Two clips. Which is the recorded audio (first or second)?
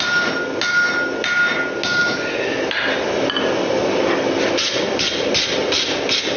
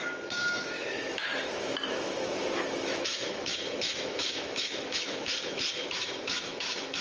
first